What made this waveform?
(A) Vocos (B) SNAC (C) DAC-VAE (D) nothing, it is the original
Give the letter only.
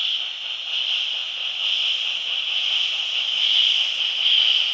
D